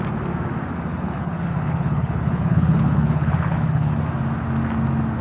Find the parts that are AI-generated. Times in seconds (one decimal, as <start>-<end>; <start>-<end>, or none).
0.9-4.0